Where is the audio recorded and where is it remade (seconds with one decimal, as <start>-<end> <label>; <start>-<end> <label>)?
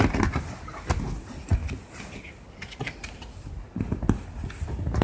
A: 0.0-5.0 recorded